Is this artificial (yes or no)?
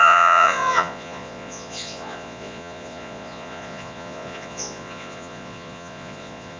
yes